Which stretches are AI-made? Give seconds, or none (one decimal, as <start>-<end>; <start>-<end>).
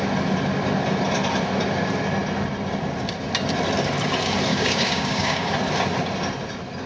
4.5-5.5